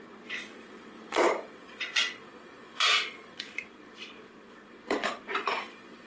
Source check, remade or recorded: remade